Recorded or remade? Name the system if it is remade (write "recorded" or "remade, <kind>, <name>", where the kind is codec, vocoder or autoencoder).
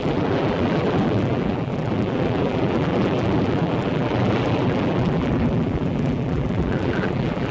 remade, vocoder, BigVGAN v2